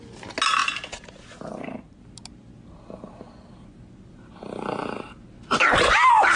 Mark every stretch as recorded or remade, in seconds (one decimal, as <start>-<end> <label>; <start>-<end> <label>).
0.0-6.4 recorded